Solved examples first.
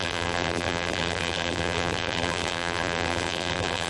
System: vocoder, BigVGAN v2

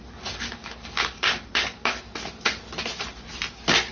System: none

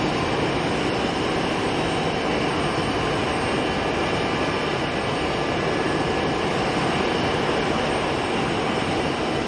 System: none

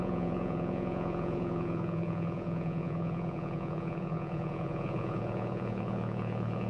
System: vocoder, Vocos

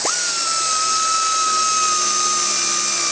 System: none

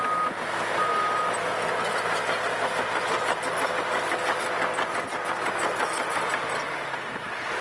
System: none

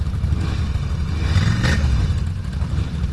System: none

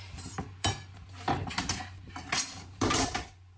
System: vocoder, BigVGAN v2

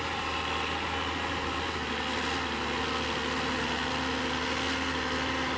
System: none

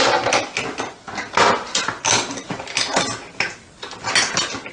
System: none